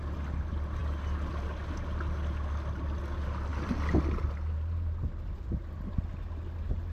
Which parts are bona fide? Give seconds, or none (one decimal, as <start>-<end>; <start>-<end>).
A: 0.0-6.9